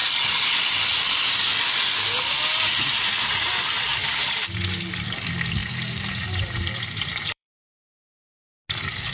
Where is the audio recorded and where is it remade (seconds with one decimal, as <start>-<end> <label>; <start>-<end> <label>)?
0.0-3.9 recorded; 3.9-4.8 remade; 4.8-5.6 recorded; 5.6-8.5 remade; 8.5-9.1 recorded